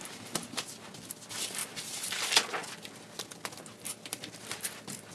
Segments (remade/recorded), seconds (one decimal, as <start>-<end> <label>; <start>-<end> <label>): 0.0-5.1 recorded